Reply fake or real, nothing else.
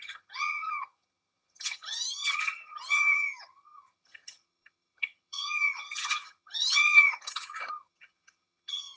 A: fake